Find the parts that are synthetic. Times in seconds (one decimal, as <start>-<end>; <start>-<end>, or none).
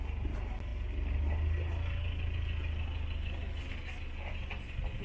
none